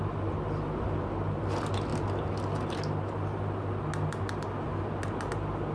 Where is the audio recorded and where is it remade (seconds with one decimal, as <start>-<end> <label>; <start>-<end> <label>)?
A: 0.0-5.7 recorded